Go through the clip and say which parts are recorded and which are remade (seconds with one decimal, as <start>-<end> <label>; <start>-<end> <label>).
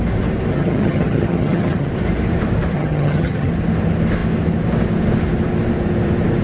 0.0-0.5 recorded; 0.5-1.9 remade; 1.9-2.7 recorded; 2.7-3.5 remade; 3.5-6.4 recorded